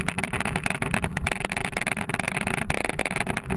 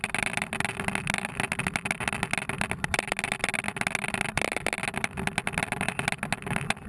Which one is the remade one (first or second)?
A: first